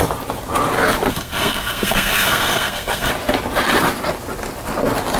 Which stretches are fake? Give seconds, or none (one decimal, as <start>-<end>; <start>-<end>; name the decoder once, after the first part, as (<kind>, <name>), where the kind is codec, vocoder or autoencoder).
1.1-3.1 (codec, SNAC)